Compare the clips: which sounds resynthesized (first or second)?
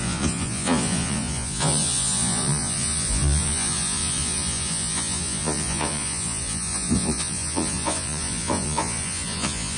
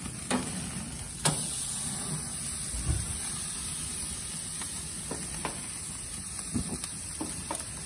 first